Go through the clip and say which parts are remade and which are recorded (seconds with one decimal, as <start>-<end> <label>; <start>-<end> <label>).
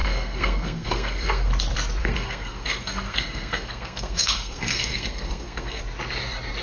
0.0-1.5 remade; 1.5-2.0 recorded; 2.0-5.8 remade; 5.8-6.6 recorded